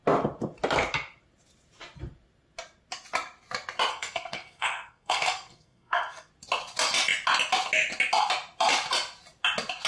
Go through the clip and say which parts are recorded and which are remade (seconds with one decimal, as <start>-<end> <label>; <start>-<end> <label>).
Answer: 0.0-3.9 recorded; 3.9-6.3 remade; 6.3-9.9 recorded